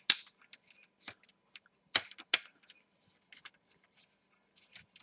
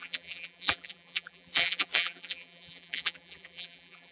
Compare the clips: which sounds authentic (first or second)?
first